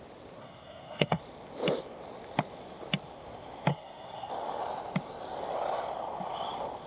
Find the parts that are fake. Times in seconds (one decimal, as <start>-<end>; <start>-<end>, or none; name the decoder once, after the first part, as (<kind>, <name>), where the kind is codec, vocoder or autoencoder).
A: 0.4-1.2 (codec, SNAC); 3.7-4.3

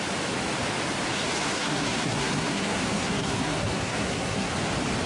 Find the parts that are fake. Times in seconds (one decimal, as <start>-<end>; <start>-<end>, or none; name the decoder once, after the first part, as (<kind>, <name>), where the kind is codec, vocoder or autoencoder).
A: 1.4-4.5 (codec, SNAC)

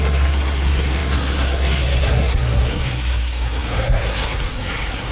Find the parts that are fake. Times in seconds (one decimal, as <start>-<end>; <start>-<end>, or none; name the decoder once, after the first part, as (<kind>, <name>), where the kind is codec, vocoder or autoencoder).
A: 0.0-5.1 (codec, SNAC)

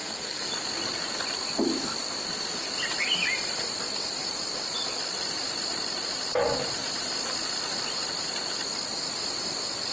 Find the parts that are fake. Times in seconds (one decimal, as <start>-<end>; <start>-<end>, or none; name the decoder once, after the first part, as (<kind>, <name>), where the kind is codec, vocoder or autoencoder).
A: 0.0-0.5 (codec, SNAC)

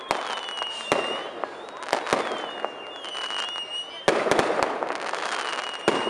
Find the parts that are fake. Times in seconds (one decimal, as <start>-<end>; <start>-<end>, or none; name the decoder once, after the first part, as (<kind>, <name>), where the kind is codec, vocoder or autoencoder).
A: none